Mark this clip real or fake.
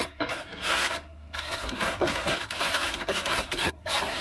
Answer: fake